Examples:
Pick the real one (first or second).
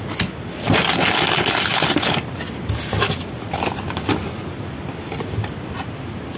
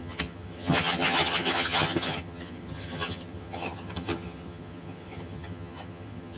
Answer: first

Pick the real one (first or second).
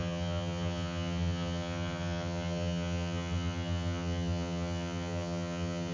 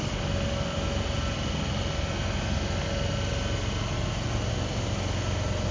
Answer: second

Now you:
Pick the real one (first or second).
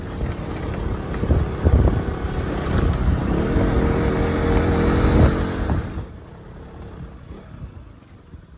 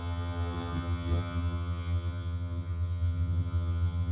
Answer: first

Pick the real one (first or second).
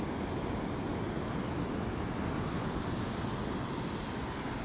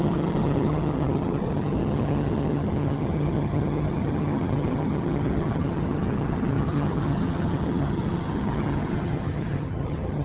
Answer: first